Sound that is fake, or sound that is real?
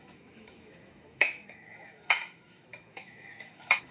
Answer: fake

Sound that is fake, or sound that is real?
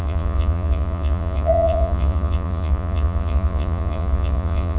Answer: fake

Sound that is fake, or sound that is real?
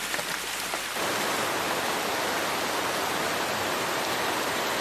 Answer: real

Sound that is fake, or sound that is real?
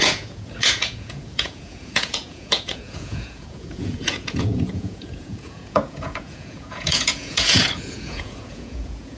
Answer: fake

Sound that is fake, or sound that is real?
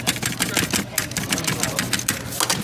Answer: real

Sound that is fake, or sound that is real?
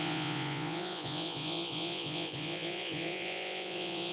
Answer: fake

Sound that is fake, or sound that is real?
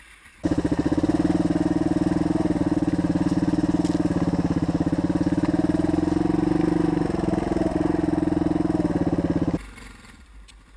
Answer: real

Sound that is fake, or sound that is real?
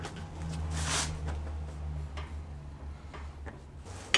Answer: real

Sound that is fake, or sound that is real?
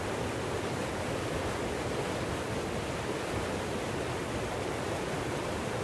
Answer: real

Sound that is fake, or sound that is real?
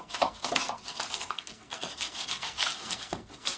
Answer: fake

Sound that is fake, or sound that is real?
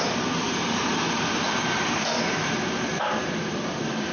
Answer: fake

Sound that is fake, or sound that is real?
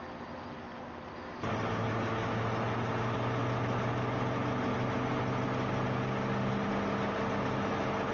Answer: real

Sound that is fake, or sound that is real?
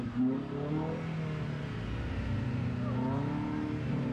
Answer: real